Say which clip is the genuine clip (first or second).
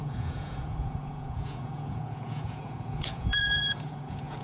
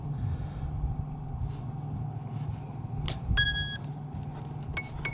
second